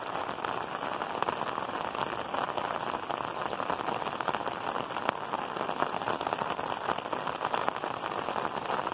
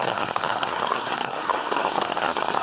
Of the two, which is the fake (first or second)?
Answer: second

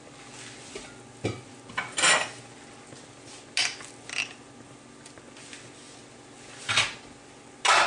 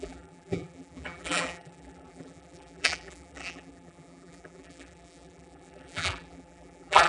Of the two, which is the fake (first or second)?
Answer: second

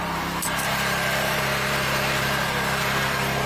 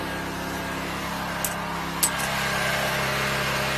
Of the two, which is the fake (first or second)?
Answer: first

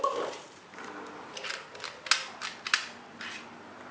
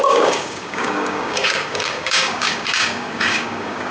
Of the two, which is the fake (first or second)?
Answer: second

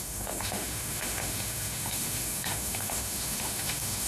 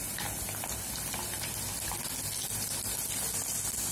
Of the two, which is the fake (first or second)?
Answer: first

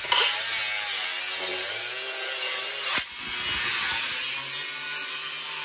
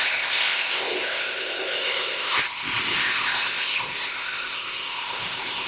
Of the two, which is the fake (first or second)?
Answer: second